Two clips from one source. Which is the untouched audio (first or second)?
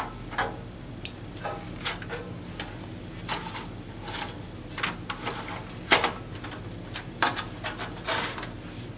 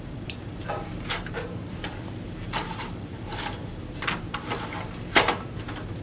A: first